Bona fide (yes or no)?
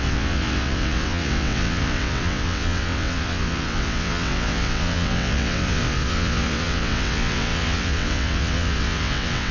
no